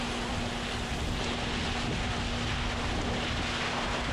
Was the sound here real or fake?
real